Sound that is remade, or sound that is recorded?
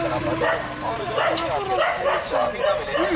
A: recorded